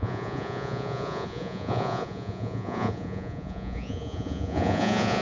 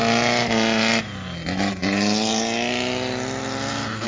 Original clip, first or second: second